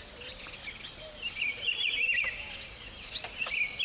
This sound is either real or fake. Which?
real